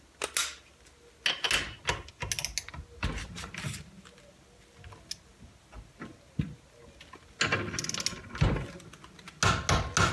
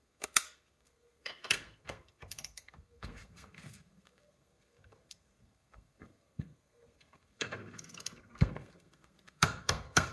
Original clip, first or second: first